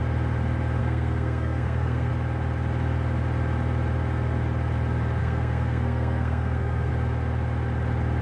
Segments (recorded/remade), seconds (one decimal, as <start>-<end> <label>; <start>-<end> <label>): 0.0-0.8 recorded; 0.8-2.1 remade; 2.1-5.2 recorded; 5.2-6.9 remade; 6.9-8.2 recorded